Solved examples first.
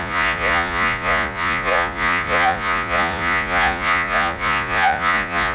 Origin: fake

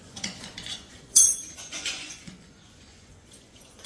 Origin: fake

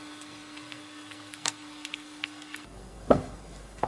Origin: fake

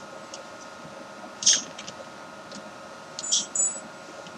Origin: real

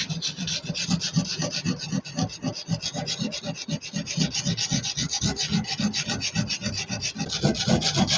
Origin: real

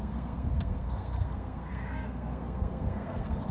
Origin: fake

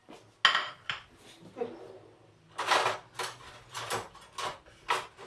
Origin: real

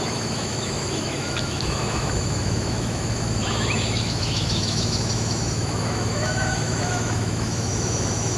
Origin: fake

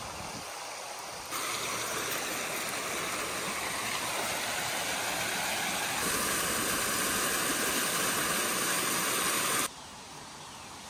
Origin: real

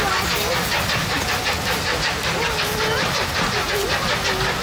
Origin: real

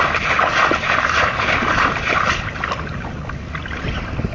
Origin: real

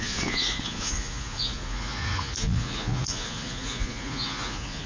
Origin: fake